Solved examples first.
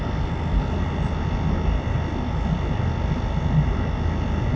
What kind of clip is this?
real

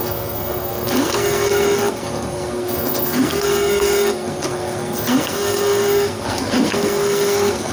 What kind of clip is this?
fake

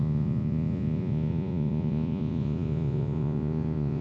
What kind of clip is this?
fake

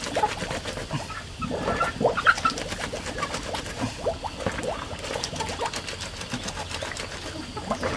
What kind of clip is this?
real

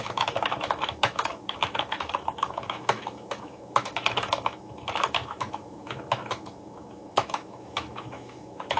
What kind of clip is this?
fake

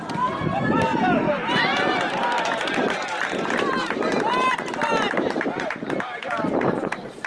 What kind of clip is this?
fake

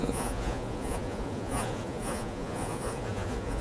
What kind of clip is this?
fake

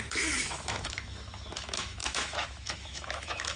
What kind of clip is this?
fake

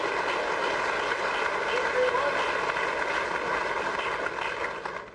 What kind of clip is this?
real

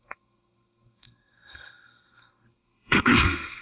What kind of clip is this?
fake